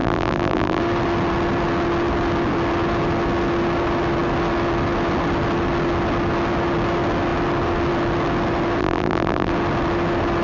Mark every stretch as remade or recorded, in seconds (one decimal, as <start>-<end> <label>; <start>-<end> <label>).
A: 0.0-0.8 remade; 0.8-8.8 recorded; 8.8-9.5 remade; 9.5-10.4 recorded